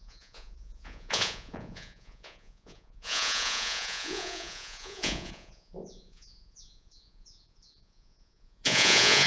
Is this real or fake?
fake